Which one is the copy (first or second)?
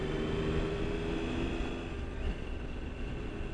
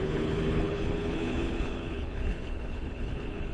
second